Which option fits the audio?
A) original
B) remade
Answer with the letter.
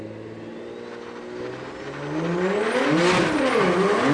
A